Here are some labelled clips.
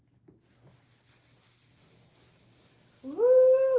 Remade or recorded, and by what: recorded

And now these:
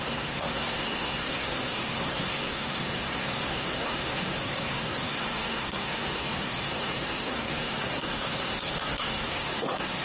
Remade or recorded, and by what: remade, codec, SNAC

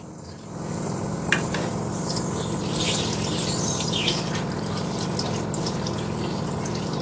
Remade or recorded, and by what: recorded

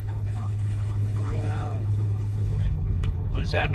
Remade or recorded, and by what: remade, codec, HILCodec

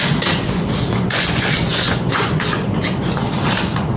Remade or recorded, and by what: remade, vocoder, Vocos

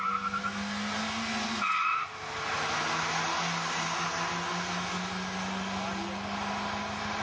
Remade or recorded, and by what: recorded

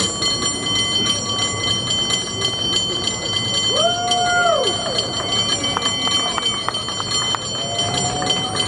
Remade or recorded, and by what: recorded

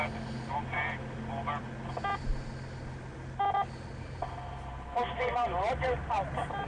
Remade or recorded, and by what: recorded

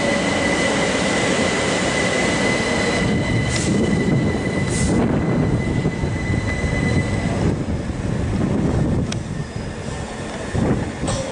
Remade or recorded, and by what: recorded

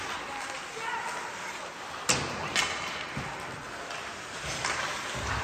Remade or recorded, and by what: recorded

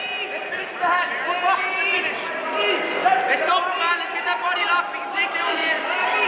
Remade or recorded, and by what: recorded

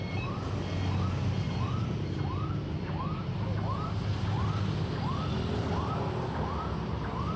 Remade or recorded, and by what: recorded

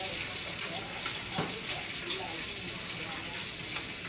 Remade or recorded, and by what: recorded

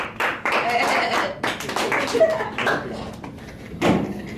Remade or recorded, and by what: recorded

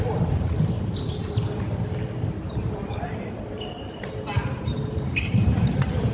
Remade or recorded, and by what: remade, vocoder, BigVGAN v2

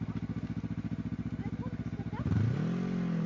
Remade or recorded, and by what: recorded